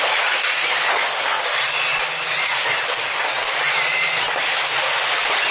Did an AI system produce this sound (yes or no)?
no